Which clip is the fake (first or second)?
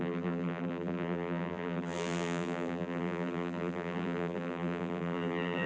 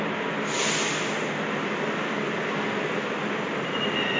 first